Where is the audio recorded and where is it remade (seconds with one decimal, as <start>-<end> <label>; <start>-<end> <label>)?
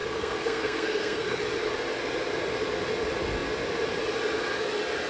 0.0-1.4 remade; 1.4-5.1 recorded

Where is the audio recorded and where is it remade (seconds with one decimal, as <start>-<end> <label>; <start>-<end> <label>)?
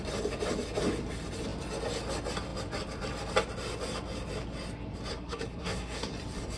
0.0-5.1 recorded; 5.1-6.1 remade; 6.1-6.6 recorded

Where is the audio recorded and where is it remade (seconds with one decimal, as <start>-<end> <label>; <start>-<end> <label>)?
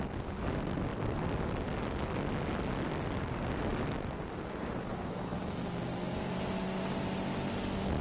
0.0-8.0 recorded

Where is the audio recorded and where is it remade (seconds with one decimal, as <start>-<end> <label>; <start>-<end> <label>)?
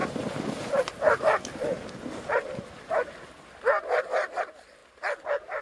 0.0-5.6 recorded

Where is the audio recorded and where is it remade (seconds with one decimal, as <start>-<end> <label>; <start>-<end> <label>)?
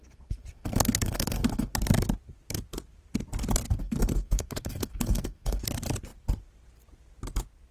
0.0-1.7 remade; 1.7-3.8 recorded; 3.8-5.6 remade; 5.6-7.7 recorded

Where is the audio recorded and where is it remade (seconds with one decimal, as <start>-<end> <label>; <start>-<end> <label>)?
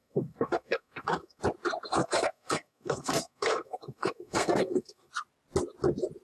0.0-1.4 remade; 1.4-2.0 recorded; 2.0-5.1 remade; 5.1-6.2 recorded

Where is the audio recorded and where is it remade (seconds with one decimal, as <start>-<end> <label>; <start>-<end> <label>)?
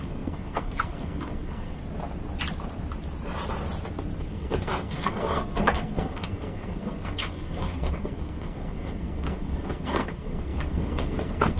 0.0-1.8 remade; 1.8-4.2 recorded; 4.2-11.6 remade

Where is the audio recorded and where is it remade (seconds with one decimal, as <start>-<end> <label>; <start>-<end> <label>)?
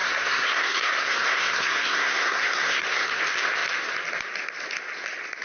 0.0-3.2 remade; 3.2-5.4 recorded